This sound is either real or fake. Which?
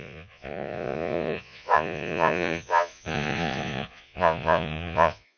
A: fake